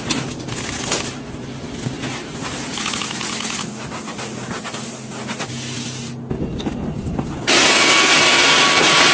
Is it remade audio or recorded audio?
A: recorded